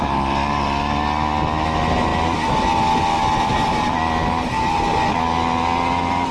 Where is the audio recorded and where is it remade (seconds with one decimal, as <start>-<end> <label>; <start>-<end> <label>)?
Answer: 0.0-6.3 recorded